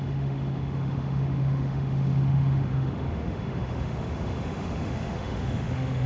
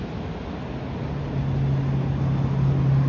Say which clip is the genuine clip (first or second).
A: second